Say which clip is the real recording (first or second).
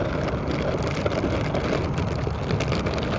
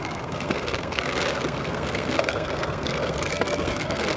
first